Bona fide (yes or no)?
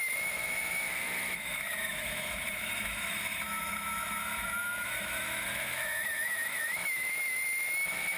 no